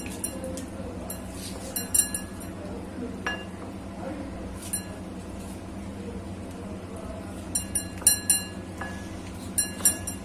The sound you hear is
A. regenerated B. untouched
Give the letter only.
B